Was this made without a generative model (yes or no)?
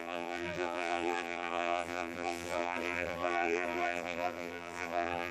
no